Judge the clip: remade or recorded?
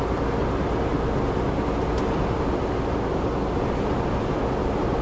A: recorded